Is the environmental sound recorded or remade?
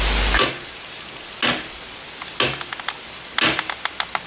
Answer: recorded